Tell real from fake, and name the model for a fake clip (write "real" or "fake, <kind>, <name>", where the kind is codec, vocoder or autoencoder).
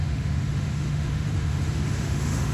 fake, autoencoder, DAC-VAE